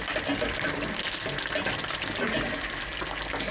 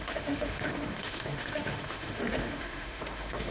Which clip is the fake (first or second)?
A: second